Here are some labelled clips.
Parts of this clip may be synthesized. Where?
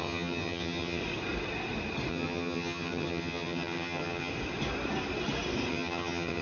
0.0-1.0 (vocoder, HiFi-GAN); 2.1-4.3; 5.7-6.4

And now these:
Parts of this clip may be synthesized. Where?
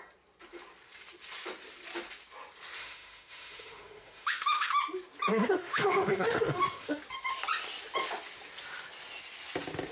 2.8-4.7 (autoencoder, DAC-VAE); 5.3-7.0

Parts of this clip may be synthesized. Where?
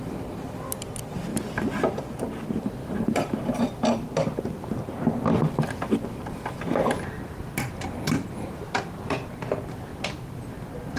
1.3-2.0 (vocoder, BigVGAN v2); 2.8-3.6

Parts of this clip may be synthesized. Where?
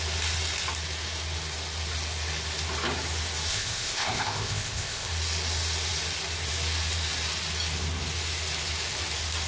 3.5-5.1 (codec, ZipCodec)